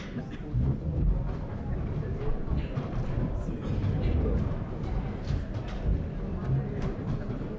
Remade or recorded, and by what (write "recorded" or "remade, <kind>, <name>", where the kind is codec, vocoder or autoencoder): recorded